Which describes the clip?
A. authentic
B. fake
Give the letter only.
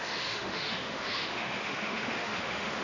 B